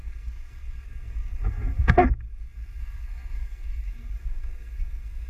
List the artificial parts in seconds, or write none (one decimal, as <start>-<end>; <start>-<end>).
0.0-5.3